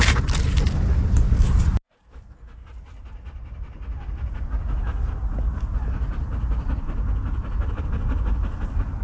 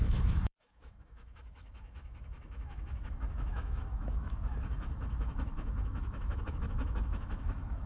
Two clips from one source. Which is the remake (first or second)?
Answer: second